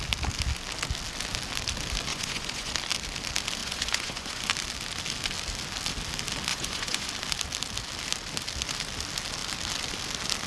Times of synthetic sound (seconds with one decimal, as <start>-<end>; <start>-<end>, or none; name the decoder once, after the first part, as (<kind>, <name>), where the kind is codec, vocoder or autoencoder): 2.1-2.7 (vocoder, Vocos); 3.6-4.4; 6.5-7.1